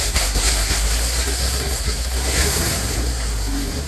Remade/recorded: remade